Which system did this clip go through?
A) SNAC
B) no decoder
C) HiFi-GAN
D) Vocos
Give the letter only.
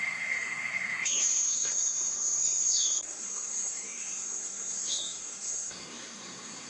A